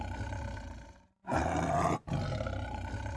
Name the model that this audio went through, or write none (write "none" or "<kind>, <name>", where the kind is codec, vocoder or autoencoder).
none